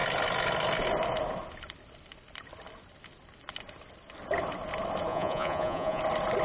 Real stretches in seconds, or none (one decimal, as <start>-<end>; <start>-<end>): 0.0-5.1; 6.0-6.4